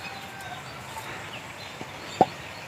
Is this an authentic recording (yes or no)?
yes